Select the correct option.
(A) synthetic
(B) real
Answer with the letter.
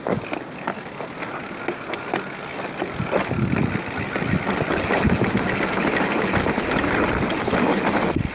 B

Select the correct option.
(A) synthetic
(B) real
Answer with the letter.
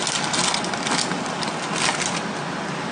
B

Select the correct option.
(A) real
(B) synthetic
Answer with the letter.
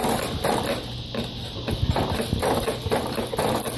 A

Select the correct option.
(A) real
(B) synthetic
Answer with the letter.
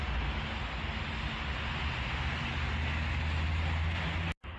A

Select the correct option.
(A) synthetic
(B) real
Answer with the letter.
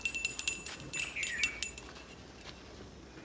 B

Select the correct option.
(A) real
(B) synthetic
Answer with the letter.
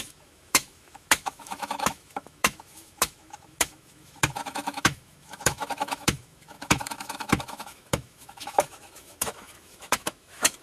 B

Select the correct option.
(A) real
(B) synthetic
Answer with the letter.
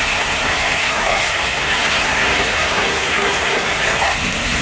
B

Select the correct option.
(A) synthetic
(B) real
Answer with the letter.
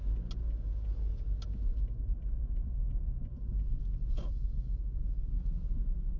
B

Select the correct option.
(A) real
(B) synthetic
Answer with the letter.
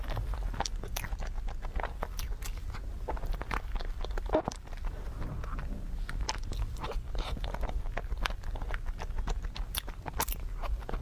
A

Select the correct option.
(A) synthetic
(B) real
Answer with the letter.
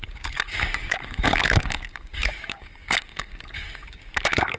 A